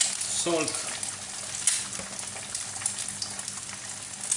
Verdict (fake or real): real